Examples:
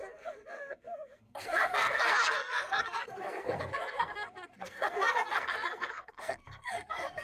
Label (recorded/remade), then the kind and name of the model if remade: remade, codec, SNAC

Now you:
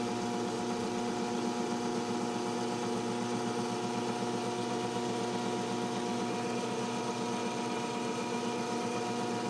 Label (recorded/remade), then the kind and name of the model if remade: recorded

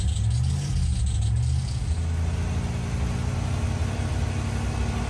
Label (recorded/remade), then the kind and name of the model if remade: recorded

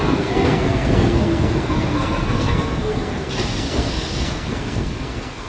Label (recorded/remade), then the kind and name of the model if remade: remade, codec, SNAC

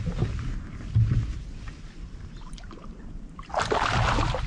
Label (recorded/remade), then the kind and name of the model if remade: recorded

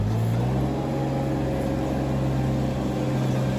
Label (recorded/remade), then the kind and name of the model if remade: recorded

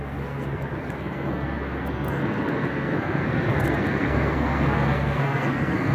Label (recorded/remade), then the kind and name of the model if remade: remade, codec, SNAC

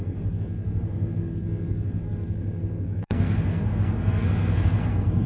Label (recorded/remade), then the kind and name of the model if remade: remade, codec, SNAC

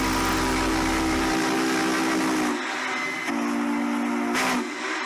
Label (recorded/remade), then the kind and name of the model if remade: recorded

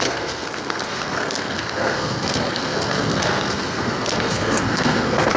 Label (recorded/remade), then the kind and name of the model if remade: remade, codec, SNAC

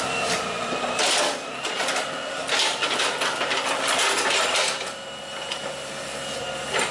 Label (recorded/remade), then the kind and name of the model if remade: recorded